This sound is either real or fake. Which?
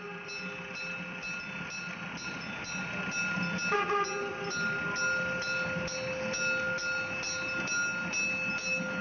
real